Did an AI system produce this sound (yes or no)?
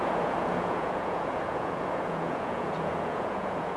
yes